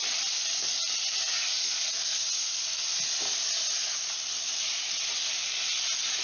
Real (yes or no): yes